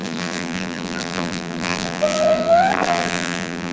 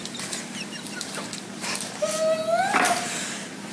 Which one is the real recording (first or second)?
second